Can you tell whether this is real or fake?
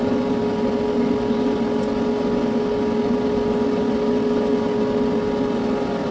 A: real